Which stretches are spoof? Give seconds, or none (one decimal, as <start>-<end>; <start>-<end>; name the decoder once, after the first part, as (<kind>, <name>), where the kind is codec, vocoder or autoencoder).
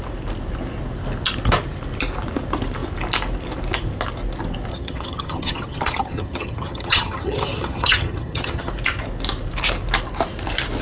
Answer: 4.7-8.7 (vocoder, HiFi-GAN)